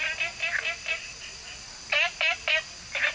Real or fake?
real